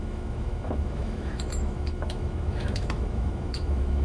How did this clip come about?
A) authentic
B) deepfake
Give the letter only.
B